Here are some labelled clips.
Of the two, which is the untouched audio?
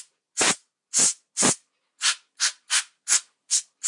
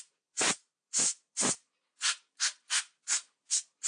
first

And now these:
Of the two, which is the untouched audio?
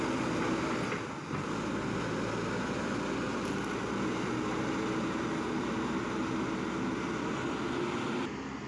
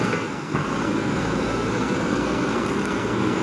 first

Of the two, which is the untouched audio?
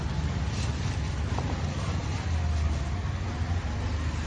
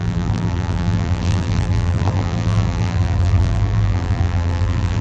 first